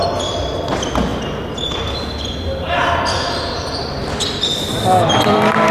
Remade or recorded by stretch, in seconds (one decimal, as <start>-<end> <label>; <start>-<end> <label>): 0.0-1.1 recorded; 1.1-4.5 remade; 4.5-5.7 recorded

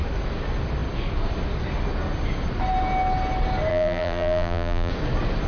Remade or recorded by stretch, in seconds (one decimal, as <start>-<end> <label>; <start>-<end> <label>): 0.0-3.7 recorded; 3.7-4.9 remade; 4.9-5.5 recorded

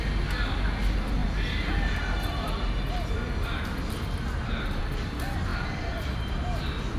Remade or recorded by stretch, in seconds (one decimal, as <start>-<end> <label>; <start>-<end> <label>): 0.0-7.0 recorded

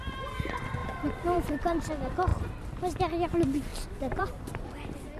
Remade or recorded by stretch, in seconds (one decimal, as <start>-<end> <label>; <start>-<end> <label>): 0.0-0.8 recorded; 0.8-1.9 remade; 1.9-2.3 recorded; 2.3-3.0 remade; 3.0-3.7 recorded; 3.7-4.3 remade; 4.3-5.2 recorded